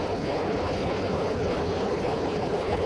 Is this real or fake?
fake